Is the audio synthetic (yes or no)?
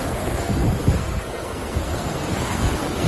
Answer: yes